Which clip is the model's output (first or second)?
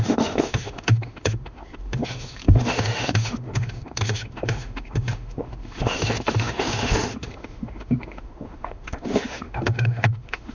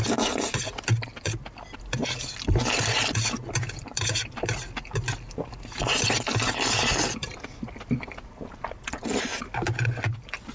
first